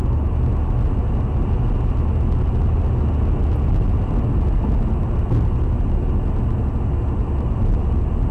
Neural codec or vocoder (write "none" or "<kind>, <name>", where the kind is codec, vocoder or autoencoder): none